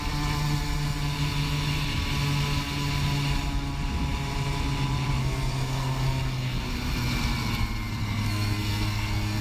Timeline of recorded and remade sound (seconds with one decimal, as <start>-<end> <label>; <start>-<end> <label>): 0.0-5.2 recorded; 5.2-6.6 remade; 6.6-8.0 recorded; 8.0-9.4 remade